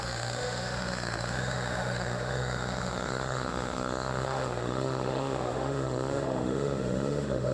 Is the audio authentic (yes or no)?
no